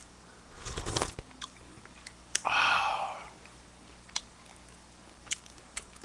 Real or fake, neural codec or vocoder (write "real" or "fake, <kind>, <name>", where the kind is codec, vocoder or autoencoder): fake, codec, DAC